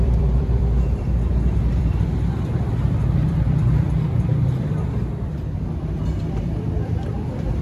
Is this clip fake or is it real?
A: fake